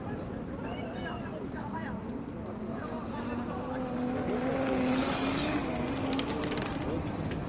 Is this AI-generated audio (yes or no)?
no